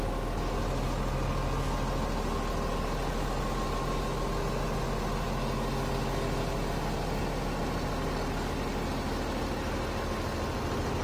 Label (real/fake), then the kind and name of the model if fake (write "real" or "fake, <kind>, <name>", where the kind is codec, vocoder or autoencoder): real